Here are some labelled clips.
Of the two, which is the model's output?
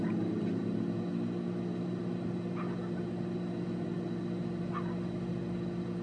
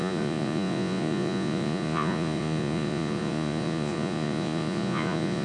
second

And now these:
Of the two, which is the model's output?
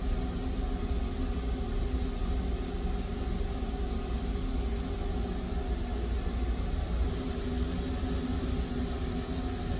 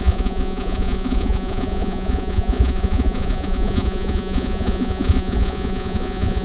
second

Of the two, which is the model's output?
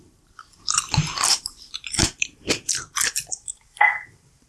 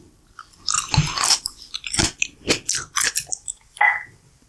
first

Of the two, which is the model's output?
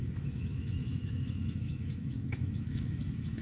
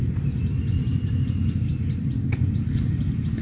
first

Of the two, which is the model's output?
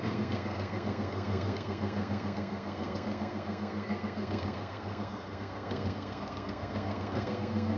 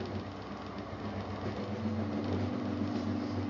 first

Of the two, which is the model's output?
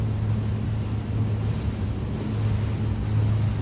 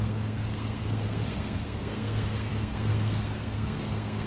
second